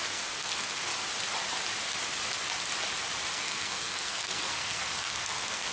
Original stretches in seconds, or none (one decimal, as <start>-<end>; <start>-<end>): 0.9-3.3